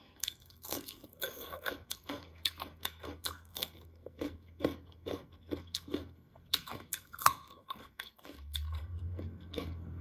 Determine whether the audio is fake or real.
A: fake